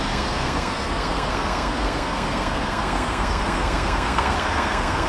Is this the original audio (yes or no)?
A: no